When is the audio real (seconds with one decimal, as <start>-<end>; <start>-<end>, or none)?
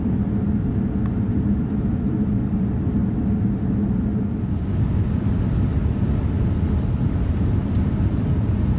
0.0-8.8